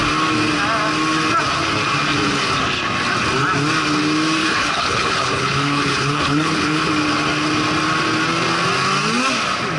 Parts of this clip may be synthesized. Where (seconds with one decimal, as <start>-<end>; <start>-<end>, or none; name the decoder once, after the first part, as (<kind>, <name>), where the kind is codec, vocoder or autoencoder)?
4.4-6.9 (codec, HILCodec)